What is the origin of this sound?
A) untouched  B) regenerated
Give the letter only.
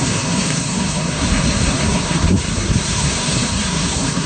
B